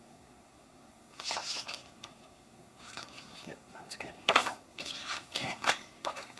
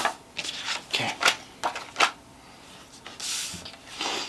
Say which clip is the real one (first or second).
second